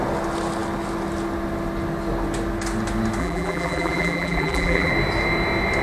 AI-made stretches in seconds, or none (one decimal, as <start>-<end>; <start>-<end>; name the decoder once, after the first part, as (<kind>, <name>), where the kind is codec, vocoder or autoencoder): 3.2-4.9 (vocoder, BigVGAN v2)